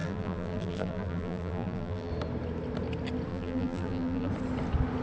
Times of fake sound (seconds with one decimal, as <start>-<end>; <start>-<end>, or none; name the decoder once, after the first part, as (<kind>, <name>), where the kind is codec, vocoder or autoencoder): 0.0-2.1 (vocoder, BigVGAN v2); 3.3-4.3